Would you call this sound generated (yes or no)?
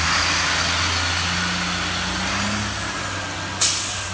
no